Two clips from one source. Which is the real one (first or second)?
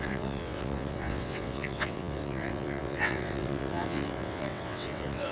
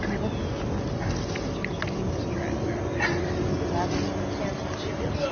second